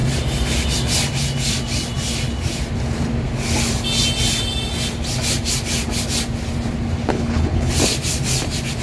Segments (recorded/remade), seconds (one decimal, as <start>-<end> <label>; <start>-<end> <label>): 0.0-7.1 recorded; 7.1-7.7 remade; 7.7-8.8 recorded

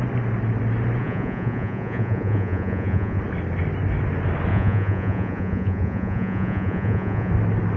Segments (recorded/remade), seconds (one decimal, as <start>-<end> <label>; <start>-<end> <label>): 0.0-1.0 recorded; 1.0-3.2 remade; 3.2-4.5 recorded; 4.5-7.3 remade; 7.3-7.8 recorded

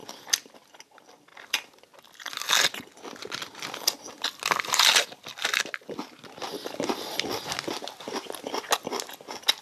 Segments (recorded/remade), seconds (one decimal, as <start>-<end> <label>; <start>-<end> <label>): 0.0-0.6 remade; 0.6-9.6 recorded

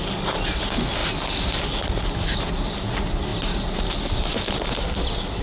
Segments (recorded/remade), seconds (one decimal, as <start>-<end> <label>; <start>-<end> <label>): 0.0-5.4 recorded

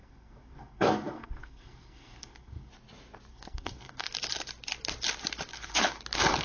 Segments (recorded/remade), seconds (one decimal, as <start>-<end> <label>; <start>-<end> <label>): 0.0-2.7 remade; 2.7-3.3 recorded; 3.3-4.1 remade; 4.1-5.5 recorded; 5.5-6.0 remade; 6.0-6.4 recorded

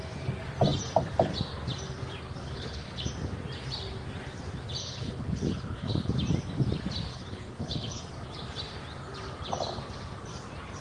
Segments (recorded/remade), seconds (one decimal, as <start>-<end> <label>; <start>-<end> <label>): 0.0-2.4 recorded; 2.4-3.1 remade; 3.1-4.8 recorded; 4.8-6.1 remade; 6.1-7.1 recorded; 7.1-8.0 remade; 8.0-10.8 recorded

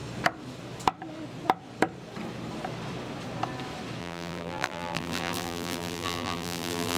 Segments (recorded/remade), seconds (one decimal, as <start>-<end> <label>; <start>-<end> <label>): 0.0-4.0 recorded; 4.0-7.0 remade